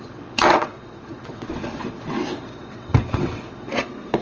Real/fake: fake